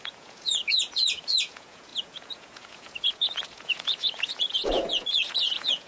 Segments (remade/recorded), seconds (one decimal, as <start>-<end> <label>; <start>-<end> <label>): 0.0-5.9 remade